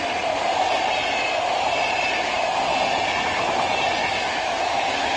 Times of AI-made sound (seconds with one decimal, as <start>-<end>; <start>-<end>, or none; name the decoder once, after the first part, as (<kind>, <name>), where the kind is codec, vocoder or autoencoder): 4.0-5.2 (autoencoder, DAC-VAE)